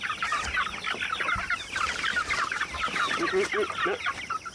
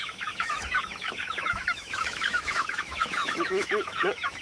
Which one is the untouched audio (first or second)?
first